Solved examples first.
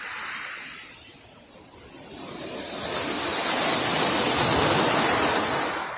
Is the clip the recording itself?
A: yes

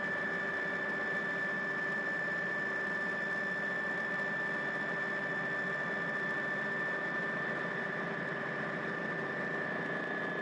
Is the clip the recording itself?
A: yes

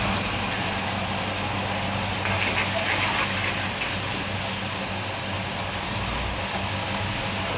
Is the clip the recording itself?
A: yes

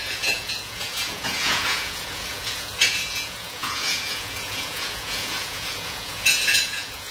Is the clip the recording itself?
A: no